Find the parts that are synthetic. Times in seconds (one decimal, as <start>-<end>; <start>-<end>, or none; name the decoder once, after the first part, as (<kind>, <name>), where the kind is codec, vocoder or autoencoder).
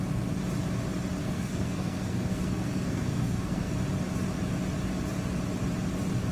1.2-3.7 (codec, SNAC)